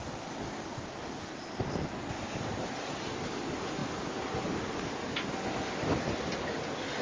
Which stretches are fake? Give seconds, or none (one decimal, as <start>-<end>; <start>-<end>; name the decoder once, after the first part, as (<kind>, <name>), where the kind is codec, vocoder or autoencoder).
none